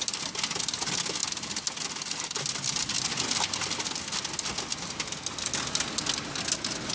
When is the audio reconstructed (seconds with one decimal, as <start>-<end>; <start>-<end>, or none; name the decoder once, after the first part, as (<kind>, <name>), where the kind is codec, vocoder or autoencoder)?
none